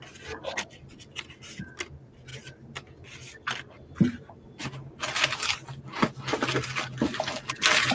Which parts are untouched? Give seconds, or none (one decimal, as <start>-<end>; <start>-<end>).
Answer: 0.0-7.9